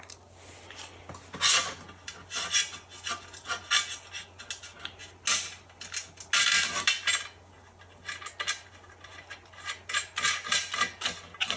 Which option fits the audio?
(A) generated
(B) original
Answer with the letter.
B